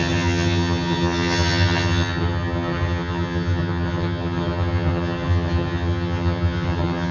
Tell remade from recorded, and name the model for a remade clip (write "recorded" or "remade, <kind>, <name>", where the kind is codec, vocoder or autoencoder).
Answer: remade, vocoder, HiFi-GAN